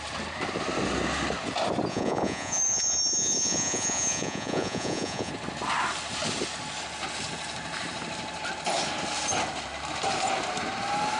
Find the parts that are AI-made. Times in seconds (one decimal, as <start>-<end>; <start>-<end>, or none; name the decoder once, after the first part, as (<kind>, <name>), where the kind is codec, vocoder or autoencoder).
1.9-5.3 (vocoder, Vocos)